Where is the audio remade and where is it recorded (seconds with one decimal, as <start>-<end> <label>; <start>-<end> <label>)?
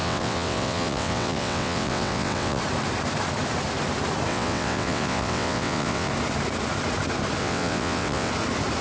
0.0-2.6 remade; 2.6-4.3 recorded; 4.3-6.1 remade; 6.1-7.4 recorded; 7.4-8.3 remade; 8.3-8.8 recorded